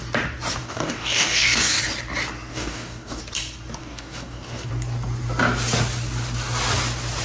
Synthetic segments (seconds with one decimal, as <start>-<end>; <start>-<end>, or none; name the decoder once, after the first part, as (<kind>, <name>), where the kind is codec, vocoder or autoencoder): 0.6-1.8 (codec, DAC); 2.5-3.2; 3.8-4.7